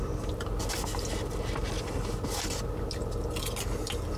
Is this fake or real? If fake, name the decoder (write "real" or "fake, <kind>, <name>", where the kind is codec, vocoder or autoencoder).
real